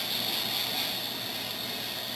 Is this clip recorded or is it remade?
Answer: recorded